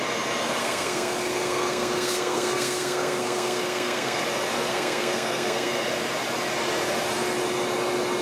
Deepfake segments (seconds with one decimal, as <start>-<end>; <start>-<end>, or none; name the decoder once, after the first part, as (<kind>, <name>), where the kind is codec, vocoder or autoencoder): 0.6-4.2 (codec, SNAC); 4.7-5.9